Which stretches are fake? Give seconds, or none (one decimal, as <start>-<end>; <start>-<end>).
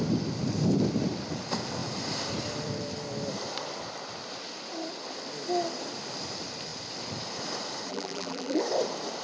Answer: 7.9-8.6